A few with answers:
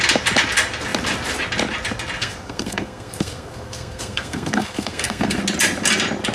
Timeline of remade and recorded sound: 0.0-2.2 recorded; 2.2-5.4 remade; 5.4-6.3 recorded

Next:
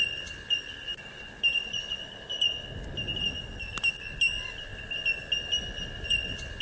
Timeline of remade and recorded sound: 0.0-6.6 recorded

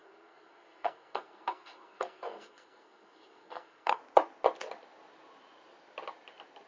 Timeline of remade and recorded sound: 0.0-4.0 remade; 4.0-6.7 recorded

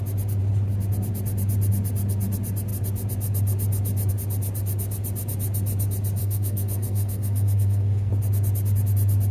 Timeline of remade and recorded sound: 0.0-6.2 recorded; 6.2-8.1 remade; 8.1-9.3 recorded

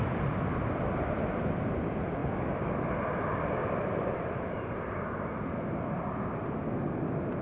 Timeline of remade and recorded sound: 0.0-7.4 recorded